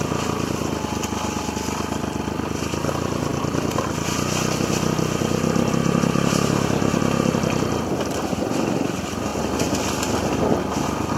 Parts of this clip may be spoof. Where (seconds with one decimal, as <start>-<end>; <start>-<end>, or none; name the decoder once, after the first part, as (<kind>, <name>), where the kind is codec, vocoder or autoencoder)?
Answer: none